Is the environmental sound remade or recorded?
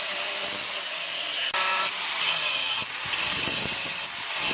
remade